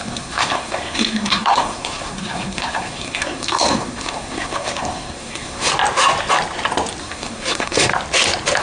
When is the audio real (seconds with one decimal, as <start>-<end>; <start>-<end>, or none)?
5.7-7.0; 7.9-8.6